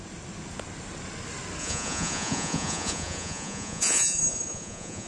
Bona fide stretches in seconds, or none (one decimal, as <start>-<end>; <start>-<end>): 0.0-1.6